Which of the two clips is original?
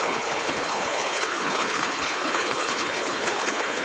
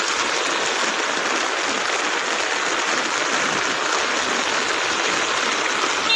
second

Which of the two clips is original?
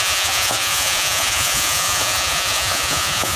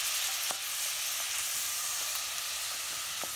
second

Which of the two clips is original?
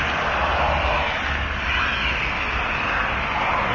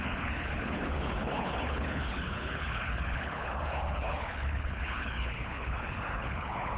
first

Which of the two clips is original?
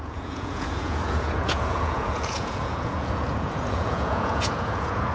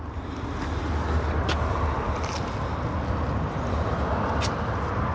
second